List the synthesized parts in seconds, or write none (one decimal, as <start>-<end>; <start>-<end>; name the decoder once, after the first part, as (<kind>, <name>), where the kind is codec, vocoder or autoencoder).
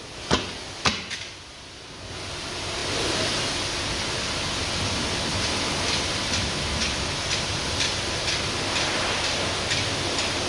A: none